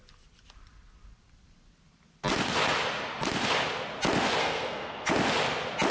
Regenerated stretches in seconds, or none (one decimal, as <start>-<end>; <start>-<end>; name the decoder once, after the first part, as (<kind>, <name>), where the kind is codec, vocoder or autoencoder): 4.4-5.1 (codec, SNAC)